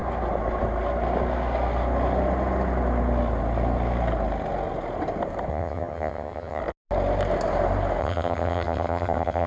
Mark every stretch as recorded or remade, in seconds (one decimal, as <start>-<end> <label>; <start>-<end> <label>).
0.0-5.5 recorded; 5.5-6.6 remade; 6.6-8.0 recorded; 8.0-9.5 remade